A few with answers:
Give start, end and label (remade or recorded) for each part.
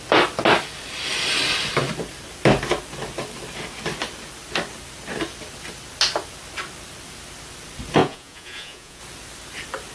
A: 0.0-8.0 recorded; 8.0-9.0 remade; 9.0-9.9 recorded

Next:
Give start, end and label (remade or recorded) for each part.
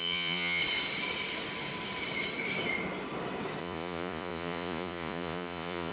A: 0.0-0.6 remade; 0.6-3.6 recorded; 3.6-5.9 remade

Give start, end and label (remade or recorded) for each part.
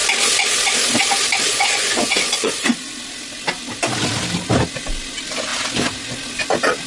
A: 0.0-1.5 recorded; 1.5-2.7 remade; 2.7-6.9 recorded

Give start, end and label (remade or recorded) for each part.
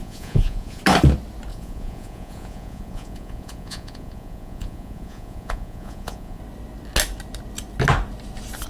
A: 0.0-0.8 remade; 0.8-1.5 recorded; 1.5-6.4 remade; 6.4-8.7 recorded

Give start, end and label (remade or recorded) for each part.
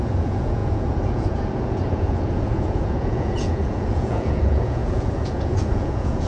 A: 0.0-6.3 remade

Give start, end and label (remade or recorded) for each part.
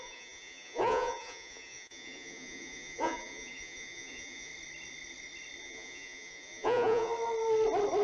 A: 0.0-4.5 remade; 4.5-5.6 recorded; 5.6-7.1 remade; 7.1-8.0 recorded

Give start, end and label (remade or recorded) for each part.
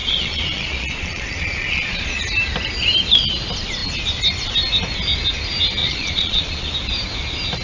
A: 0.0-2.2 remade; 2.2-5.8 recorded; 5.8-6.7 remade; 6.7-7.6 recorded